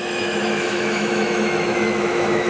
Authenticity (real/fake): fake